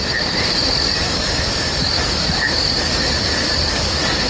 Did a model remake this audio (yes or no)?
no